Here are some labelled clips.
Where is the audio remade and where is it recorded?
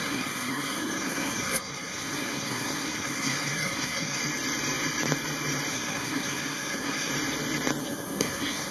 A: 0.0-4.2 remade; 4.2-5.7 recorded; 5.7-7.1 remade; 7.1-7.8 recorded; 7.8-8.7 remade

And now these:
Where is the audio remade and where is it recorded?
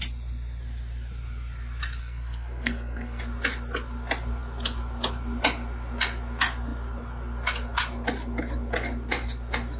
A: 0.0-2.0 recorded; 2.0-3.2 remade; 3.2-9.8 recorded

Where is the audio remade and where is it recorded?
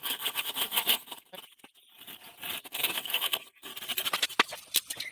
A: 0.0-1.3 remade; 1.3-2.6 recorded; 2.6-3.7 remade; 3.7-5.1 recorded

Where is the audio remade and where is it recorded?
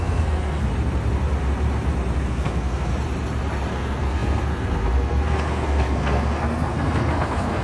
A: 0.0-0.7 remade; 0.7-2.2 recorded; 2.2-2.9 remade; 2.9-3.7 recorded; 3.7-7.6 remade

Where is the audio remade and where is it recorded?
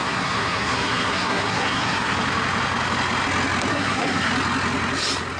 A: 0.0-2.1 remade; 2.1-3.7 recorded; 3.7-4.3 remade; 4.3-5.4 recorded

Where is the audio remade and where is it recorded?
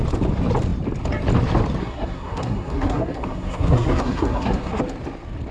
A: 0.0-1.8 recorded; 1.8-4.8 remade; 4.8-5.5 recorded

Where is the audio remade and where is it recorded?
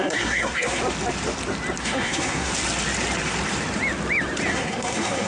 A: 0.0-0.8 remade; 0.8-1.8 recorded; 1.8-2.5 remade; 2.5-4.5 recorded; 4.5-5.3 remade